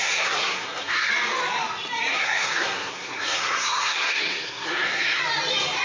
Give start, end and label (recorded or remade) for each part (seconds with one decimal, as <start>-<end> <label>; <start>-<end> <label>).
0.0-1.1 remade; 1.1-2.1 recorded; 2.1-5.2 remade; 5.2-5.8 recorded

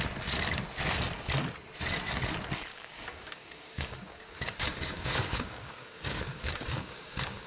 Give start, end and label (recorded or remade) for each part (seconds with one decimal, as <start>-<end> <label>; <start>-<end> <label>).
0.0-2.7 recorded; 2.7-7.5 remade

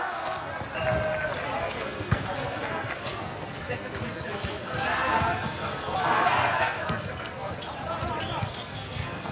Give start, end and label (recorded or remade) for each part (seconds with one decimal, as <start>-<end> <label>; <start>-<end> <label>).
0.0-0.5 remade; 0.5-1.6 recorded; 1.6-7.5 remade; 7.5-8.4 recorded; 8.4-9.3 remade

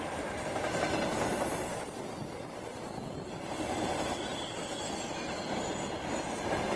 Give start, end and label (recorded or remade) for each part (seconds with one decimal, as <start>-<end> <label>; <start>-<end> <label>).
0.0-6.8 recorded

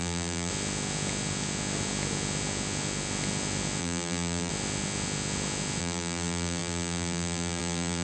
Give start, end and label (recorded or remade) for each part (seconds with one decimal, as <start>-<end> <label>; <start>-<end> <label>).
0.0-0.5 remade; 0.5-3.8 recorded; 3.8-4.5 remade; 4.5-5.8 recorded; 5.8-8.0 remade